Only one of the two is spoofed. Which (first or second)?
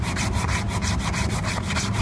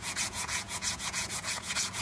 second